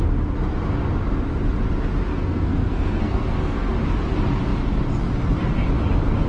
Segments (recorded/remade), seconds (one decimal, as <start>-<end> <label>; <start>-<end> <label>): 0.0-2.1 recorded; 2.1-3.7 remade; 3.7-6.3 recorded